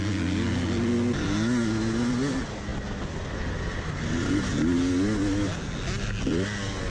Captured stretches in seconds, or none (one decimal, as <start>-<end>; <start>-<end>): 0.0-6.9